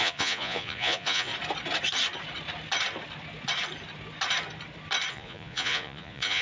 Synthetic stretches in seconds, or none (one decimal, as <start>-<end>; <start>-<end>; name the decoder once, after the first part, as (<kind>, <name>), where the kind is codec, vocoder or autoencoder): 0.0-1.3 (vocoder, Vocos); 5.1-6.4